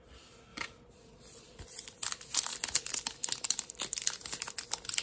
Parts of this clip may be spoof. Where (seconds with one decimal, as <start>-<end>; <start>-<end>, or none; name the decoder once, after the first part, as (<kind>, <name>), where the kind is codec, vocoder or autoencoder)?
none